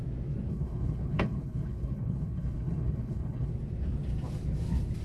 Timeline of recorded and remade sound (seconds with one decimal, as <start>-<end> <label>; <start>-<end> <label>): 0.0-0.5 recorded; 0.5-3.5 remade; 3.5-5.0 recorded